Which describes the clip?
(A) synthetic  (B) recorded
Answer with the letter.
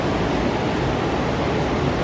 B